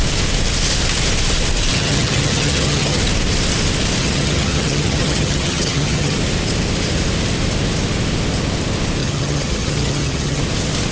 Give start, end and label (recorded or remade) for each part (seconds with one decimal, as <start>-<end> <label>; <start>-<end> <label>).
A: 0.0-1.7 recorded; 1.7-3.0 remade; 3.0-4.0 recorded; 4.0-6.2 remade; 6.2-9.0 recorded; 9.0-10.4 remade; 10.4-10.9 recorded